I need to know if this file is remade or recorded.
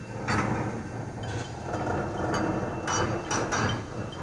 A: recorded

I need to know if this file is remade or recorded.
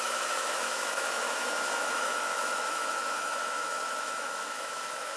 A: remade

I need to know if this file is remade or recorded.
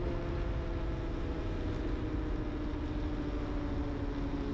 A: recorded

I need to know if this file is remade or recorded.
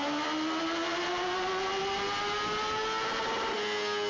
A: recorded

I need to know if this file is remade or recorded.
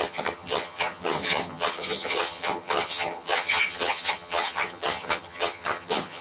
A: remade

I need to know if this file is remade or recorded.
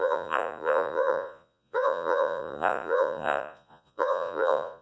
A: remade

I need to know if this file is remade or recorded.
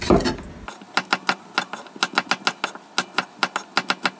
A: recorded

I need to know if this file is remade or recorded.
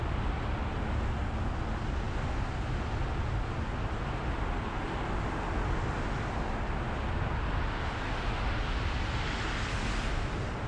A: recorded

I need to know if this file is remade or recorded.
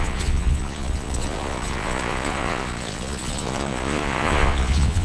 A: remade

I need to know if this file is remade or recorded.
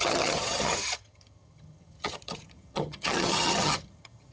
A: remade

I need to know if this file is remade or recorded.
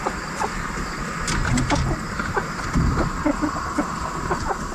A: recorded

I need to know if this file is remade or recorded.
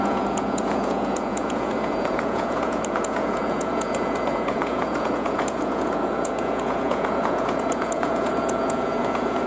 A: remade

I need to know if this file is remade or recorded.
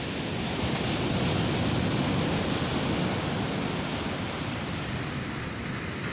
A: recorded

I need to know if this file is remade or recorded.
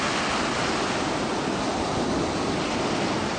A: recorded